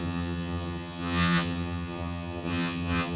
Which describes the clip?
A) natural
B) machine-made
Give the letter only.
B